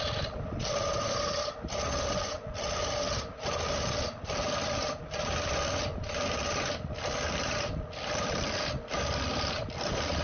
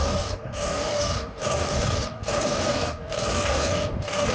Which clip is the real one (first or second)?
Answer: first